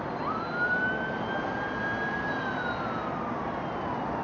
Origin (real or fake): real